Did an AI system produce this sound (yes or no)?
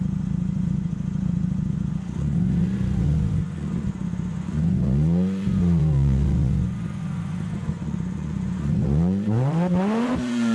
yes